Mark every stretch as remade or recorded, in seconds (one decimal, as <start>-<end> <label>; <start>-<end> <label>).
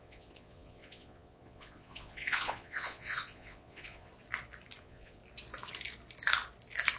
0.0-4.1 remade; 4.1-4.8 recorded; 4.8-5.2 remade; 5.2-7.0 recorded